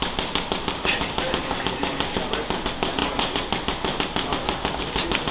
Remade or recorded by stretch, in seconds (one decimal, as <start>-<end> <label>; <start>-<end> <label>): 0.0-5.3 recorded